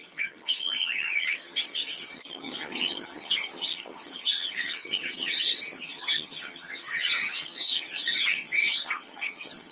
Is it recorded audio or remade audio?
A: remade